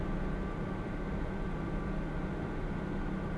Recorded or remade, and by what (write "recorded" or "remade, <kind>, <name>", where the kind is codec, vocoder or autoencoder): recorded